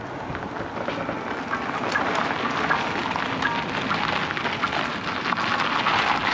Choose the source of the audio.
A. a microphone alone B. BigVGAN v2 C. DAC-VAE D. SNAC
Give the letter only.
A